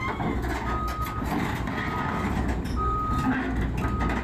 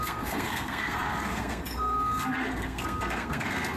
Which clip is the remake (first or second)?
second